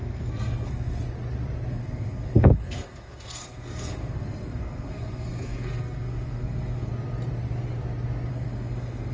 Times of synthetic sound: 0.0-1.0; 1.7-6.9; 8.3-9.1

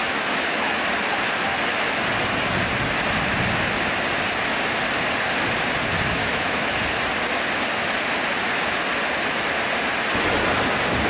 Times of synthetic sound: 0.0-0.6; 6.2-6.8

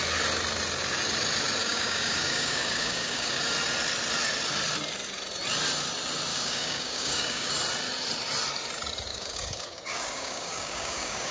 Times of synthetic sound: 1.6-3.3; 6.3-7.5; 9.1-11.3

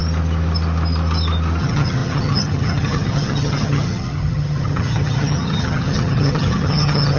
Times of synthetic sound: 1.6-7.2

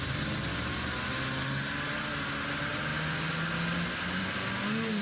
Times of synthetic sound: none